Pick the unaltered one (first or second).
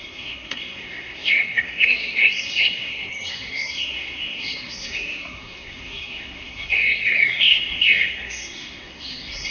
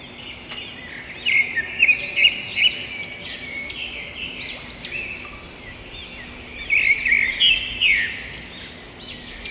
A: second